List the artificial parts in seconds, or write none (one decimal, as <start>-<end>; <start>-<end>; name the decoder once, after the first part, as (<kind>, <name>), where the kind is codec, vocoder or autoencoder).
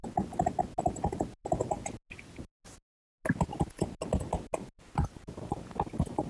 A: none